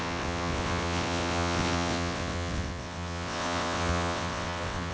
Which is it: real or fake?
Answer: fake